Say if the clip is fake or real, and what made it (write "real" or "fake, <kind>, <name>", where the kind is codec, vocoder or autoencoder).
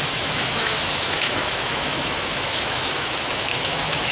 fake, autoencoder, DAC-VAE